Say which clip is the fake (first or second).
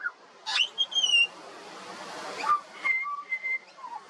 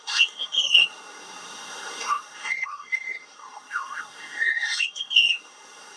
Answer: second